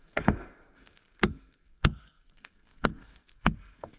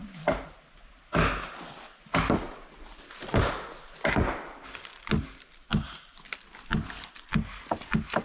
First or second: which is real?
second